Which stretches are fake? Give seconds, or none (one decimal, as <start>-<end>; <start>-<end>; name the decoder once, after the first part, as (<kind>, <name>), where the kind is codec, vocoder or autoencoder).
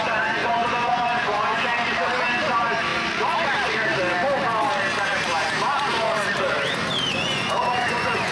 0.0-1.7 (vocoder, Vocos); 2.5-2.9; 7.1-8.3